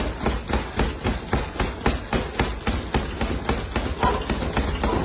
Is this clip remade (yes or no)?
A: no